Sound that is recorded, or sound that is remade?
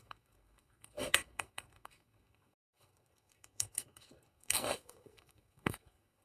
remade